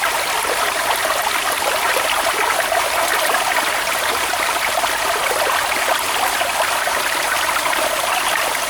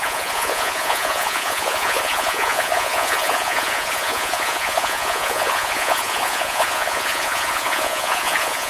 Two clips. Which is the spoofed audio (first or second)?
second